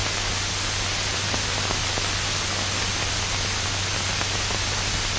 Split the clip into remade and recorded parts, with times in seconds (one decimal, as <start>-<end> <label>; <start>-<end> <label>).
0.0-5.2 recorded